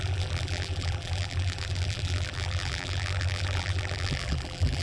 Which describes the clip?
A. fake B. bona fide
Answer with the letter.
A